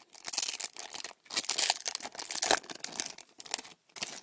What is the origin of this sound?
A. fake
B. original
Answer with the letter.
B